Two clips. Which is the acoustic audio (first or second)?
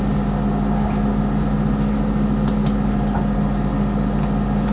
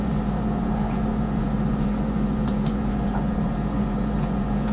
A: first